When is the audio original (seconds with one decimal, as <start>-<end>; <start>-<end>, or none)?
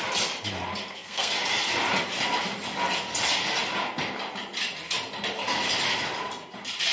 0.0-0.8; 1.3-6.9